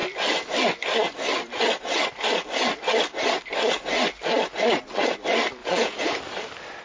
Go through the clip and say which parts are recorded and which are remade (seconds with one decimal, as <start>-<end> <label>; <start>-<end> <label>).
0.0-5.6 recorded; 5.6-6.2 remade; 6.2-6.8 recorded